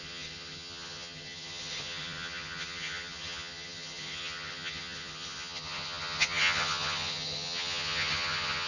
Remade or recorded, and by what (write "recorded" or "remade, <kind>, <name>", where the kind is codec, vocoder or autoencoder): remade, vocoder, HiFi-GAN